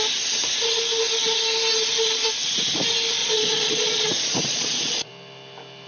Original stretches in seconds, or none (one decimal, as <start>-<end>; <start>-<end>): 0.0-3.2; 5.1-5.9